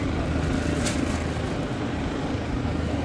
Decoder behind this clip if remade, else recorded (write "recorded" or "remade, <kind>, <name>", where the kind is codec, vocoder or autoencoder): recorded